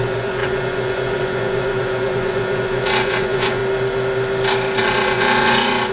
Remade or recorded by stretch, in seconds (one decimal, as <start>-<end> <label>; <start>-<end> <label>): 0.0-3.6 remade; 3.6-4.8 recorded; 4.8-5.9 remade

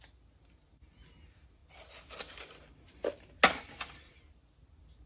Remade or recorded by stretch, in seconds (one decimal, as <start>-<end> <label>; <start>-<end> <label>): 0.0-5.1 recorded

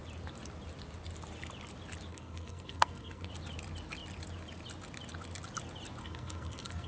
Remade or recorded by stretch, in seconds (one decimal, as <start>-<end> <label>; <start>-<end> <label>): 0.0-2.1 recorded; 2.1-3.3 remade; 3.3-6.0 recorded; 6.0-6.9 remade

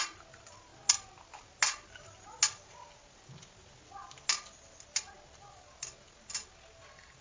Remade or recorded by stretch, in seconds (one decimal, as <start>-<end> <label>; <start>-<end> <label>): 0.0-7.2 recorded

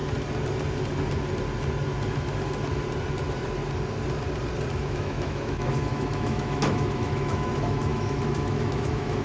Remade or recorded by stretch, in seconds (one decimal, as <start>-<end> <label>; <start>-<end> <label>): 0.0-4.7 recorded; 4.7-9.2 remade

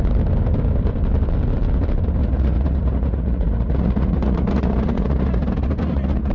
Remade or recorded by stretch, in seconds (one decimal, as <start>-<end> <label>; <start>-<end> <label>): 0.0-2.2 recorded; 2.2-6.3 remade

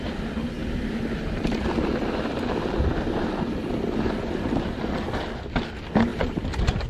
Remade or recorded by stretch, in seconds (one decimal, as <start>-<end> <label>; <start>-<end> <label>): 0.0-6.1 recorded; 6.1-6.9 remade